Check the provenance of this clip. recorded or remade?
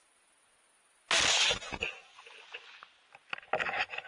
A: recorded